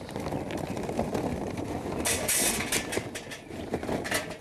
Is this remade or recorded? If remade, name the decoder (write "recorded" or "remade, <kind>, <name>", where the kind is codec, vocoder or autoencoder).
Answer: recorded